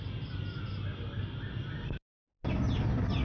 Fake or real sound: real